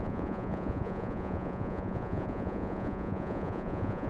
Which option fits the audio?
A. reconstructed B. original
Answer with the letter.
A